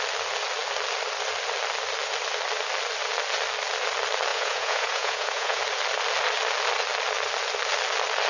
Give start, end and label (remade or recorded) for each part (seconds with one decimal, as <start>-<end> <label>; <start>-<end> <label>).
0.0-4.3 recorded; 4.3-5.6 remade; 5.6-8.3 recorded